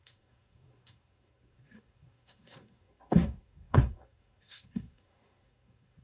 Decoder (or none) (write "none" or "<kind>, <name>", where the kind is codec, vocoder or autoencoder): codec, SNAC